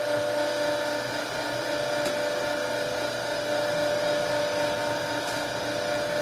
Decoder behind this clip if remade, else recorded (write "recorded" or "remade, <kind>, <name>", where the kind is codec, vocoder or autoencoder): recorded